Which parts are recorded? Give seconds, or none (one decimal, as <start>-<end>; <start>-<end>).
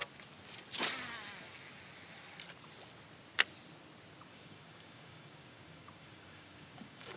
0.0-4.3